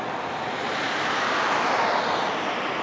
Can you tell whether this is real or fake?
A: real